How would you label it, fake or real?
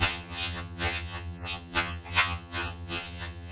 fake